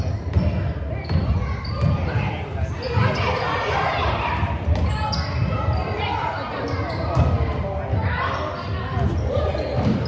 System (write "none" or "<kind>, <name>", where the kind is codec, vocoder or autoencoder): none